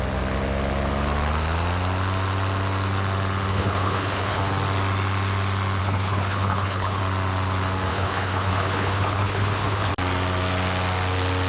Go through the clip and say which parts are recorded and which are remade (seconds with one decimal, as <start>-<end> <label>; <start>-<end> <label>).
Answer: 0.0-3.5 recorded; 3.5-4.4 remade; 4.4-5.8 recorded; 5.8-7.0 remade; 7.0-7.9 recorded; 7.9-9.9 remade; 9.9-11.5 recorded